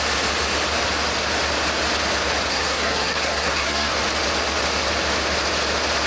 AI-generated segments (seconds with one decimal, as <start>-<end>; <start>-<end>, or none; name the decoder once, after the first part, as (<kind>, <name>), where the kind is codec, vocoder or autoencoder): 2.5-3.9 (codec, SNAC)